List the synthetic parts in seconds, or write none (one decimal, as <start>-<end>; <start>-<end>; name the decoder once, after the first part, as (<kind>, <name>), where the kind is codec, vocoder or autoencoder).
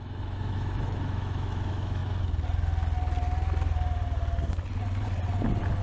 0.0-2.0 (autoencoder, DAC-VAE)